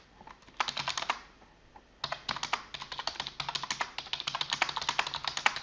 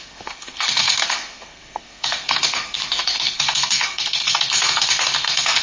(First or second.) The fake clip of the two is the second